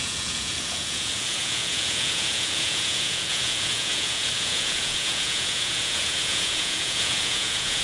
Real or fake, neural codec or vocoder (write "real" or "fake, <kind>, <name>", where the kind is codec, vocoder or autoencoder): fake, vocoder, Vocos